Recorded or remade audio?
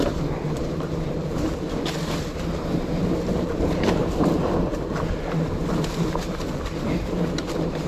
remade